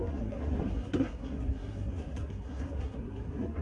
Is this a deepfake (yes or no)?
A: yes